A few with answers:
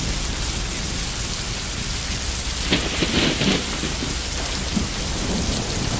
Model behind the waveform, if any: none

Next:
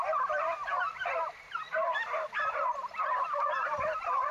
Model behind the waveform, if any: vocoder, BigVGAN v2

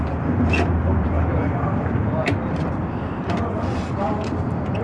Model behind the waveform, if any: vocoder, BigVGAN v2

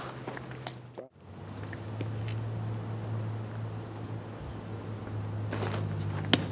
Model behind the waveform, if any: none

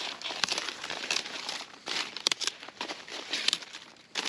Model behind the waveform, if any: vocoder, BigVGAN v2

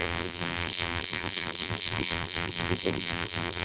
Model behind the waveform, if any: vocoder, BigVGAN v2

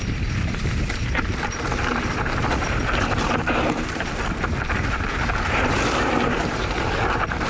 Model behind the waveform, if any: vocoder, BigVGAN v2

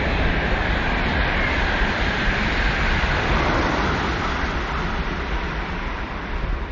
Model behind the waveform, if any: vocoder, BigVGAN v2